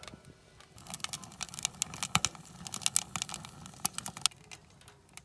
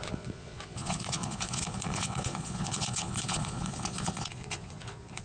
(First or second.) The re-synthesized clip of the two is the second